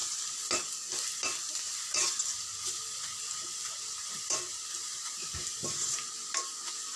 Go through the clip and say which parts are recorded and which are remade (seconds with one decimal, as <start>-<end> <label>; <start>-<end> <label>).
0.0-7.0 recorded